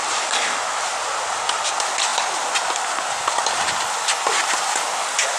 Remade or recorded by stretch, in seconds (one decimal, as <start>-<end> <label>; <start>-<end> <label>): 0.0-5.4 recorded